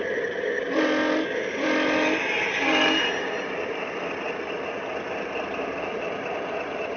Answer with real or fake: real